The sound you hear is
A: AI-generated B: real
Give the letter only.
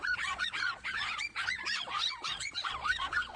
A